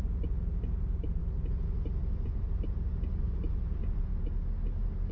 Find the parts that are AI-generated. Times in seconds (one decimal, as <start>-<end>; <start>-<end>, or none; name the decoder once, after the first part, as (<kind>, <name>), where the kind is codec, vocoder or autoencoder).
0.0-1.2 (vocoder, BigVGAN v2); 2.4-4.1